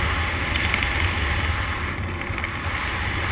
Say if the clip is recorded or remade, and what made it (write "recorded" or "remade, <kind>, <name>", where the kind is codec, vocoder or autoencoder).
recorded